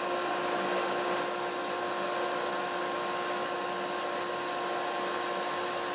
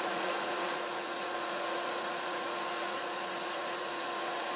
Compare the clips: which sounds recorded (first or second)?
first